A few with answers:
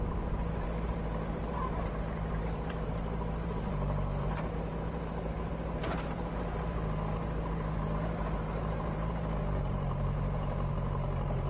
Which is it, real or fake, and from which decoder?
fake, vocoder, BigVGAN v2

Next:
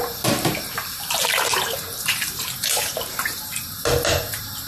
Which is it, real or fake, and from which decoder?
fake, vocoder, BigVGAN v2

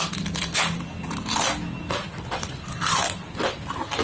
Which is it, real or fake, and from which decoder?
real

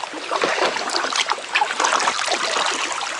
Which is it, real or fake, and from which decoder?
real